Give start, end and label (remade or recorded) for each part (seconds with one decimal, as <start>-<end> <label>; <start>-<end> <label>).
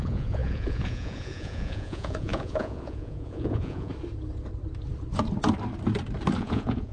0.0-3.9 remade; 3.9-6.4 recorded; 6.4-6.9 remade